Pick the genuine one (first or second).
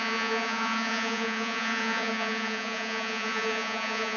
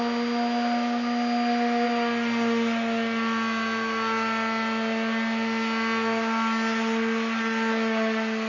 second